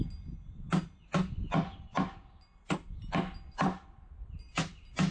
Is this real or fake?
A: real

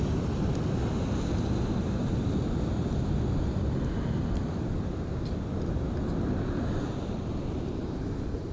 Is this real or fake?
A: real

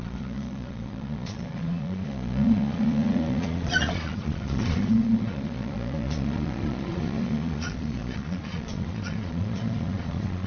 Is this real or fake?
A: fake